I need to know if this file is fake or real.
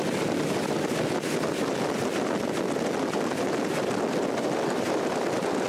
real